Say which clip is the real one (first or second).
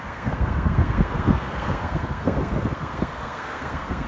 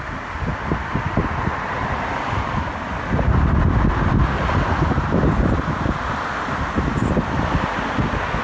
second